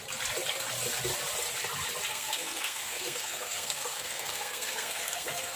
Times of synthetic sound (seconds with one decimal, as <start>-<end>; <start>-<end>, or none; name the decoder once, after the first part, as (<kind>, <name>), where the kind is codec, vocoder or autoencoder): 2.1-5.6 (codec, SNAC)